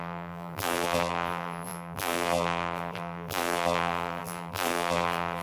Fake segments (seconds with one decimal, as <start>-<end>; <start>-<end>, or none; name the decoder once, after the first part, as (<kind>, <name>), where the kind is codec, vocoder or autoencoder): 0.0-5.4 (vocoder, BigVGAN v2)